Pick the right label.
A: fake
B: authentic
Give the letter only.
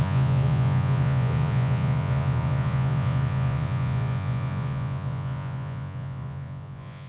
A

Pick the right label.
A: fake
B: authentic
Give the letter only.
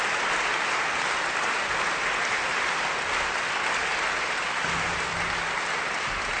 B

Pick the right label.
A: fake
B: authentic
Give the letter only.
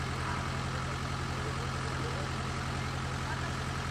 B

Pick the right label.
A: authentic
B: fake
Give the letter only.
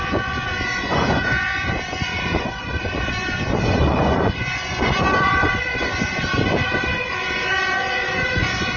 B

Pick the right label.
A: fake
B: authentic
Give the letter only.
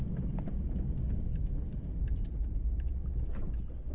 B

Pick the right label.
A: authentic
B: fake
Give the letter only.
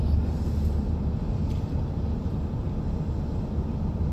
A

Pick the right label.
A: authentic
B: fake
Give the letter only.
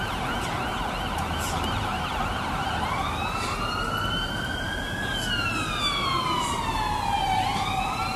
A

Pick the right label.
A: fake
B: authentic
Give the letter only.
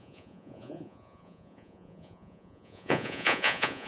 A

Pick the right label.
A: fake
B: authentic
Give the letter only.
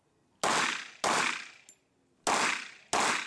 B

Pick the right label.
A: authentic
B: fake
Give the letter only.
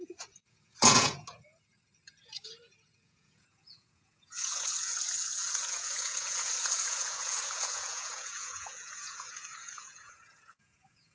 B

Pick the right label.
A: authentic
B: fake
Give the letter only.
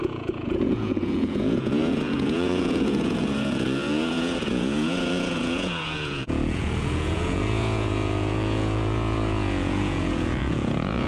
B